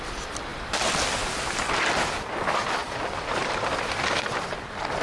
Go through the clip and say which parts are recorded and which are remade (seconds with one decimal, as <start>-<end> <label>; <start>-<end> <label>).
0.0-5.0 recorded